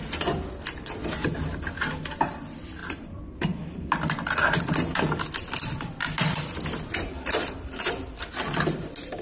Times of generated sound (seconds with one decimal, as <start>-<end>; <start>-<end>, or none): 0.0-9.2